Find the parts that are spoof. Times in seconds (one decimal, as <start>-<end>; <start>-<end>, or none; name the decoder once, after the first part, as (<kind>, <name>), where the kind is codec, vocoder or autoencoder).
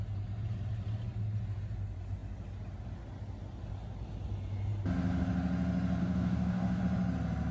6.0-6.8 (codec, DAC)